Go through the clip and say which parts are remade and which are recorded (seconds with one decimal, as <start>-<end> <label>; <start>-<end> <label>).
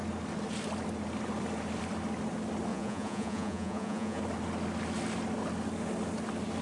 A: 0.0-2.7 recorded; 2.7-4.2 remade; 4.2-6.6 recorded